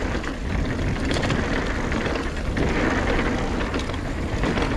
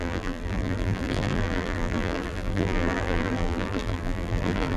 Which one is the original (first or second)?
first